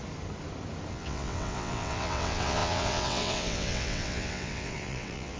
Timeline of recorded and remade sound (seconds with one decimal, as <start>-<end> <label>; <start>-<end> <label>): 0.0-0.9 recorded; 0.9-5.4 remade